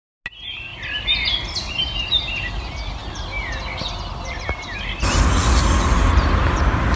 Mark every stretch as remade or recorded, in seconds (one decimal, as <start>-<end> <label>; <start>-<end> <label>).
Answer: 0.0-7.0 recorded